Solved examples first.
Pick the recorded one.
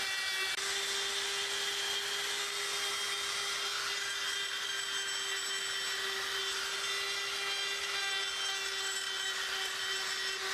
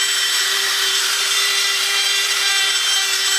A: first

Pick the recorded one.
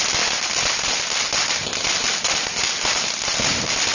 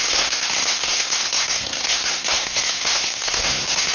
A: first